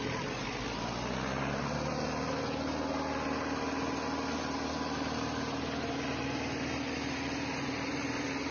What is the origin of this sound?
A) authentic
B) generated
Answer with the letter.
A